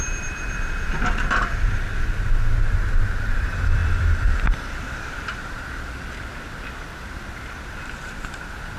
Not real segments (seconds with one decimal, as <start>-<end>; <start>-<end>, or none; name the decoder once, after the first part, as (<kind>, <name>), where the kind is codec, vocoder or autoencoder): 0.0-8.8 (vocoder, BigVGAN v2)